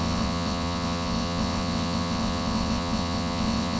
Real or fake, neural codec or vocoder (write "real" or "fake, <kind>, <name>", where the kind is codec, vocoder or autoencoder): fake, vocoder, WaveNeXt